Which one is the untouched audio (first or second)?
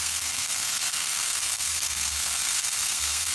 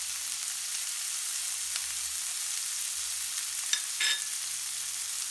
second